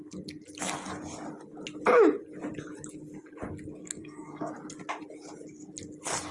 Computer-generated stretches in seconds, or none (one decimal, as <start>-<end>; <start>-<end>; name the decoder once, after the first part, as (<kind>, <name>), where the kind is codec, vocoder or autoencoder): 3.8-4.5 (codec, SNAC)